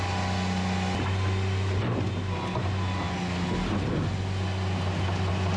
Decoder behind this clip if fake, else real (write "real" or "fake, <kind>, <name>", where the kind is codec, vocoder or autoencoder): real